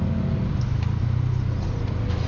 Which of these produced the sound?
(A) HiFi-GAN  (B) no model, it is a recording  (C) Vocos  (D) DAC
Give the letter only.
B